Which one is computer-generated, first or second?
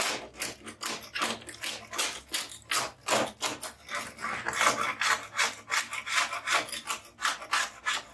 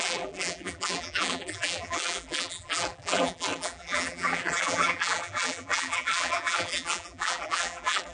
second